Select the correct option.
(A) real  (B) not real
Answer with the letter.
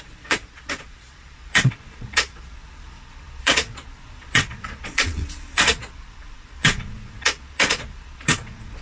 B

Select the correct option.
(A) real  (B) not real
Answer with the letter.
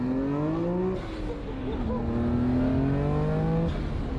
A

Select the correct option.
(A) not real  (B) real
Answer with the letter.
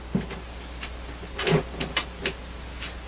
B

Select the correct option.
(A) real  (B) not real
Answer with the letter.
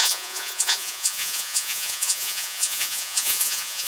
B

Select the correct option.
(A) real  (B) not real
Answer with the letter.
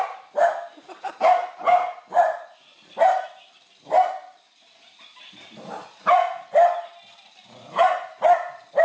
A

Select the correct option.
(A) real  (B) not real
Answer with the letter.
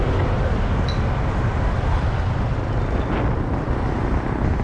A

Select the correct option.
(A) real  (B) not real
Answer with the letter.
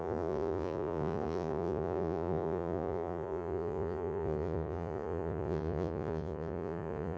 B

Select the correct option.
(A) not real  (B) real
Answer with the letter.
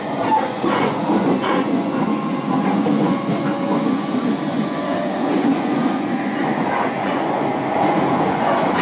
A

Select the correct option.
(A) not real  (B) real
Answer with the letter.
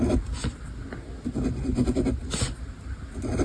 B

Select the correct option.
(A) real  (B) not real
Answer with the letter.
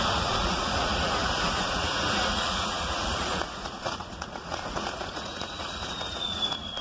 B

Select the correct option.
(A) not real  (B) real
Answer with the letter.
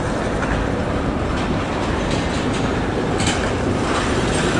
B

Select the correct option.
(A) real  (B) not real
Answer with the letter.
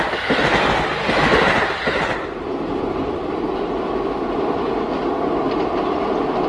A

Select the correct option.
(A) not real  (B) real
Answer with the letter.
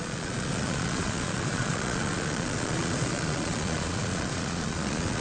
A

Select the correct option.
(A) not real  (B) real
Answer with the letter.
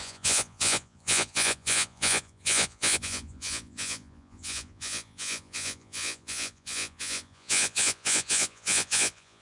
A